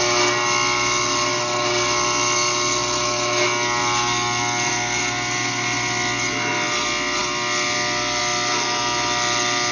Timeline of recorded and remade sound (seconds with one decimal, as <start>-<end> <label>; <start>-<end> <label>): 0.0-9.7 recorded

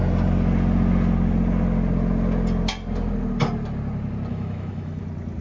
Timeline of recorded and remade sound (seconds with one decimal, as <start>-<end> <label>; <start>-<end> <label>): 0.0-4.3 recorded; 4.3-5.0 remade; 5.0-5.4 recorded

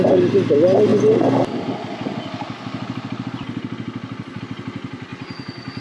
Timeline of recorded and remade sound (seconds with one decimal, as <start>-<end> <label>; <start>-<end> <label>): 0.0-5.8 recorded

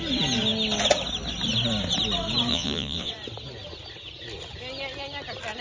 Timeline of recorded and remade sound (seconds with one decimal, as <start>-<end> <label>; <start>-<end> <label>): 0.0-2.5 recorded; 2.5-3.1 remade; 3.1-5.6 recorded